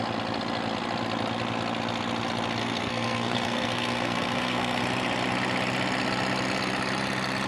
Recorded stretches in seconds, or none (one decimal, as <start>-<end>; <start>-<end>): 0.0-2.6; 4.8-7.5